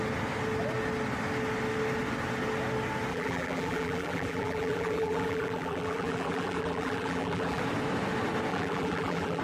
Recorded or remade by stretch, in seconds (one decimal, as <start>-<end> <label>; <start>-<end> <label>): 0.0-3.1 recorded; 3.1-7.6 remade; 7.6-8.5 recorded; 8.5-9.4 remade